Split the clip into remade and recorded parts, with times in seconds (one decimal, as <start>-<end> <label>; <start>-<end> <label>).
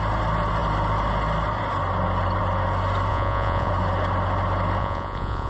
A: 0.0-3.1 recorded; 3.1-3.7 remade; 3.7-4.8 recorded; 4.8-5.5 remade